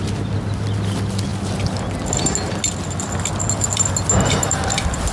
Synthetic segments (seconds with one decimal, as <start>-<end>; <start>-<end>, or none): none